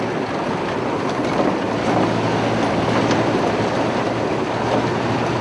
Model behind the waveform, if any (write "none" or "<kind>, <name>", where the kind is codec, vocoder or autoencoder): none